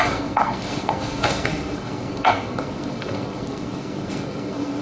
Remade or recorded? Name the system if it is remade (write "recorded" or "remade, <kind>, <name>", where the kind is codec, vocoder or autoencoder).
remade, codec, SNAC